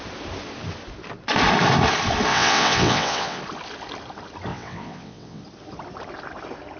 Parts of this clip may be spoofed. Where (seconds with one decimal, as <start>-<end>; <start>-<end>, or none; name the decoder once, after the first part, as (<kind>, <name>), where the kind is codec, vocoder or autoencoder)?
2.3-3.4 (vocoder, WaveNeXt); 4.5-5.4